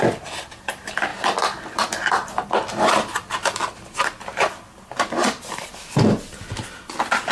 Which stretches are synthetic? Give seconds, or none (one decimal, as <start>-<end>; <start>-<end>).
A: none